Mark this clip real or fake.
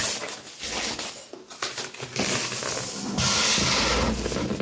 real